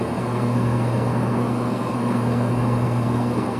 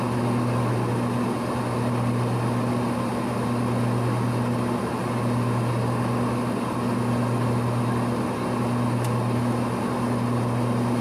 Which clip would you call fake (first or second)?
first